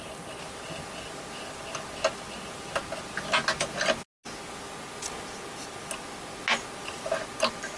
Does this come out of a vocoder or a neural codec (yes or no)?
no